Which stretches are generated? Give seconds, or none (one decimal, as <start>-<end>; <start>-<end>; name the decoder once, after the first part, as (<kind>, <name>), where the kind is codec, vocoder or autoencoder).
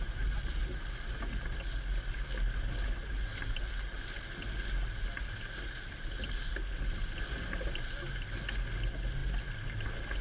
none